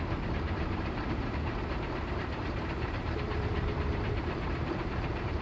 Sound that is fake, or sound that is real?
fake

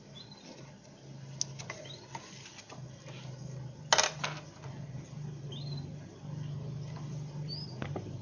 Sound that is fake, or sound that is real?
real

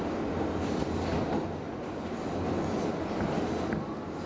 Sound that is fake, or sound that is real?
real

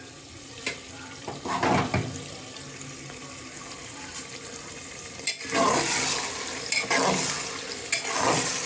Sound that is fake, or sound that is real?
real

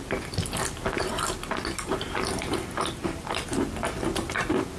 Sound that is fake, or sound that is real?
real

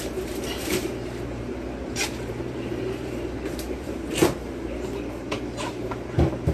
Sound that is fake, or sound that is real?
fake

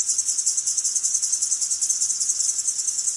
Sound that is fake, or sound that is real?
real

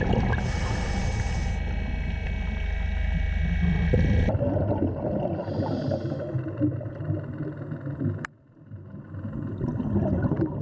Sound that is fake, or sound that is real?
real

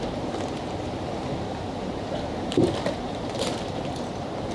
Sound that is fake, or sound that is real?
fake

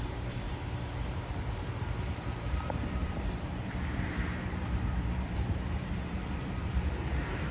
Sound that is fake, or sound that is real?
fake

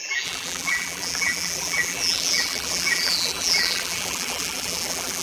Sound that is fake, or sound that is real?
fake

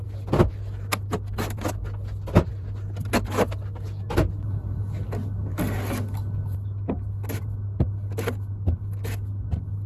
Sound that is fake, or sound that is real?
real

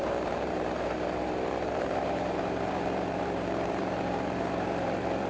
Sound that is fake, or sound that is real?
fake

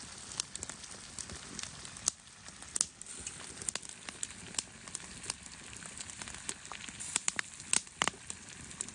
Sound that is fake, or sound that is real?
real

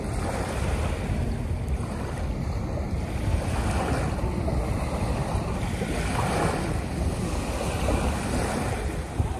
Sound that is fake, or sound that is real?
real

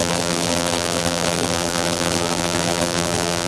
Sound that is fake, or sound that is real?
fake